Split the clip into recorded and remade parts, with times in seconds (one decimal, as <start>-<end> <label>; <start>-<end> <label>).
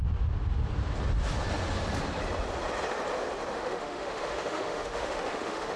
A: 0.0-3.5 recorded; 3.5-5.8 remade